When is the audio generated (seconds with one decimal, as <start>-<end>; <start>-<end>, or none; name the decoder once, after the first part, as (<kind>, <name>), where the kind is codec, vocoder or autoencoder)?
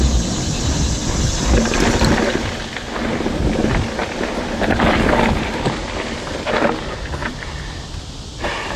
4.0-6.5 (vocoder, BigVGAN v2); 7.2-8.8